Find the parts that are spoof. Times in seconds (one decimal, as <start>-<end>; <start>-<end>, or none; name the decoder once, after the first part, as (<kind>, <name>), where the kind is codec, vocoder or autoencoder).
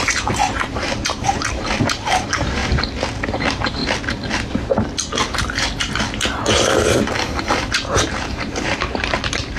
0.0-2.6 (vocoder, BigVGAN v2); 3.2-3.8; 7.4-9.6